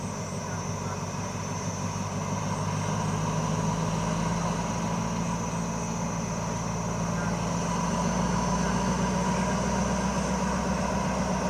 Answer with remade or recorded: recorded